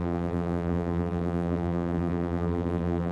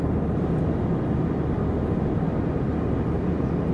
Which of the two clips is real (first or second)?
second